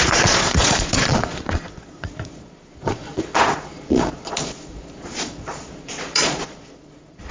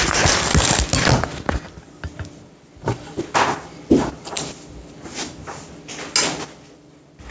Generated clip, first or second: first